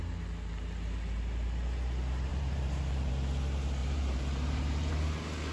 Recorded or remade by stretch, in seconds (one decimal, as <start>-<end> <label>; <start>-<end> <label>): 0.0-2.3 recorded; 2.3-3.1 remade; 3.1-3.8 recorded; 3.8-4.9 remade; 4.9-5.5 recorded